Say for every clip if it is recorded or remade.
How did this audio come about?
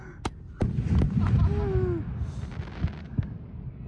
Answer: recorded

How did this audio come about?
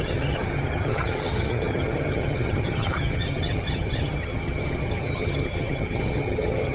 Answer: remade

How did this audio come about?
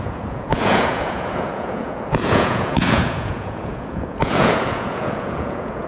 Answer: remade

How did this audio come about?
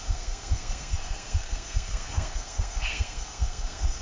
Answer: remade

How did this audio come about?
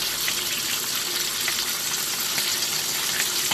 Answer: recorded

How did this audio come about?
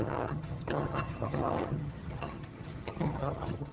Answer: remade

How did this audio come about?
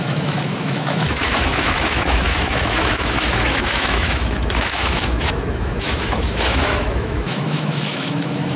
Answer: remade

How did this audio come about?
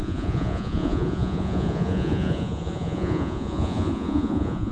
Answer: remade